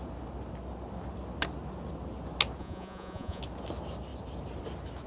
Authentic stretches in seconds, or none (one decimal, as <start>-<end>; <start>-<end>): 0.0-2.6; 3.4-5.1